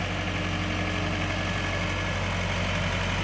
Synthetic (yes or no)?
no